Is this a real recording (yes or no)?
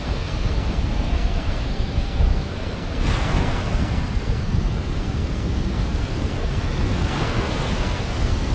no